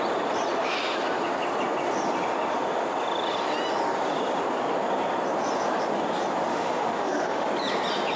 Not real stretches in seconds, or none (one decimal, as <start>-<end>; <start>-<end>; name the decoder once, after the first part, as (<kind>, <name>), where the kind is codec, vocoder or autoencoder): 6.5-7.5 (autoencoder, DAC-VAE)